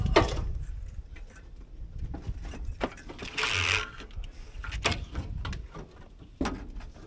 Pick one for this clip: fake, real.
real